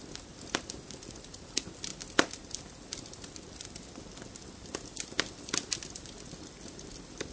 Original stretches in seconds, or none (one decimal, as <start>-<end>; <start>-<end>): 0.0-7.3